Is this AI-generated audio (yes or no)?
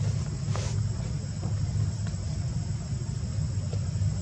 no